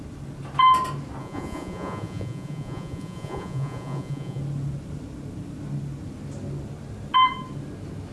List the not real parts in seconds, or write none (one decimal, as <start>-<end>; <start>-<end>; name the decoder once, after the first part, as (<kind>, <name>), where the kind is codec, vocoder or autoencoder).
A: 1.2-4.4 (vocoder, Vocos)